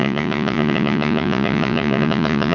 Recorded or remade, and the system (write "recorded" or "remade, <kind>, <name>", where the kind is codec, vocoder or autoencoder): remade, vocoder, Vocos